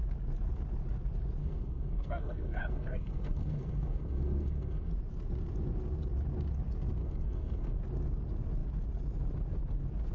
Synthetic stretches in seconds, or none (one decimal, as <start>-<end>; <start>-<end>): 1.4-4.9; 7.0-7.8